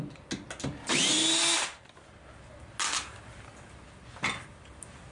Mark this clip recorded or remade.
recorded